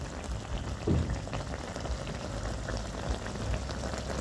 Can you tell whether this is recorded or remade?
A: recorded